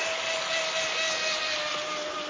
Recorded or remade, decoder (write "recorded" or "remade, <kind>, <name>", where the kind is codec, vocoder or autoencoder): recorded